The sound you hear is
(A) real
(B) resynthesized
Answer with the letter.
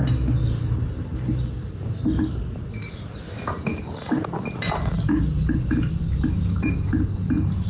A